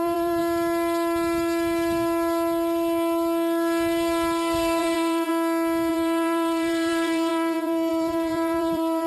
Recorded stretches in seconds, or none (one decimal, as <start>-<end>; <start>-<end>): 0.4-4.8; 5.3-5.9